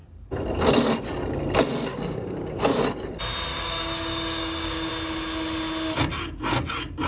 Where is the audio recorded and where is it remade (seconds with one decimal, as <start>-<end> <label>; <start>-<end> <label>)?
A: 0.0-1.9 recorded; 1.9-2.8 remade; 2.8-3.5 recorded; 3.5-4.9 remade; 4.9-7.1 recorded